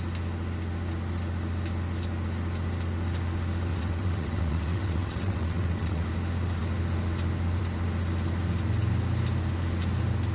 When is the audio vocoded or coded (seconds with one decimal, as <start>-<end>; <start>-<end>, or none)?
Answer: 3.7-6.1